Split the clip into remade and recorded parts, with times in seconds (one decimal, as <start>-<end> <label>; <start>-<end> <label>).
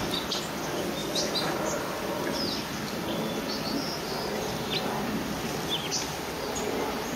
0.0-7.2 recorded